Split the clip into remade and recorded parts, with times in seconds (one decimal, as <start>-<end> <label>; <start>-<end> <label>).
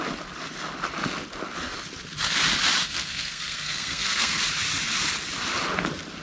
0.0-2.8 recorded; 2.8-4.4 remade; 4.4-6.2 recorded